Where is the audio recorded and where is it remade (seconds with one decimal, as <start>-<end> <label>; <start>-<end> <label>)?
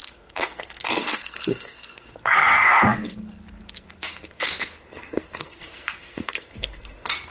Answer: 0.0-7.3 remade